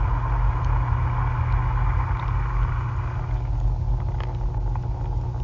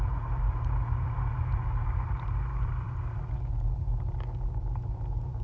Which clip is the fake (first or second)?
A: second